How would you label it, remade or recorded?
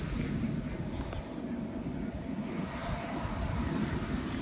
recorded